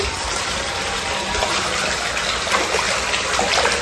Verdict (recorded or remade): recorded